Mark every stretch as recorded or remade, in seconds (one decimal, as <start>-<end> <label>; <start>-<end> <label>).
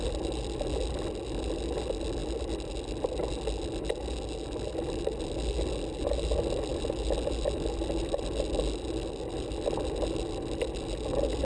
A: 0.0-11.4 recorded